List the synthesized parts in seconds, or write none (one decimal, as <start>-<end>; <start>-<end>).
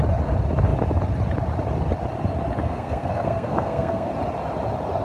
2.6-4.1